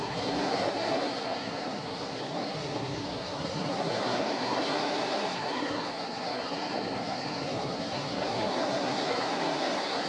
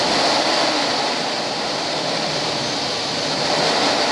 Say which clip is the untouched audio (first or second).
second